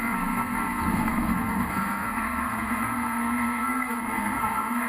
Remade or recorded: remade